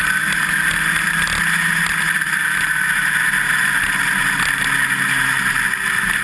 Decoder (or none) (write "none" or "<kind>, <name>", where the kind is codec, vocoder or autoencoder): none